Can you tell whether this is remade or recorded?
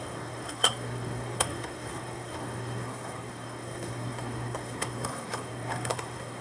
remade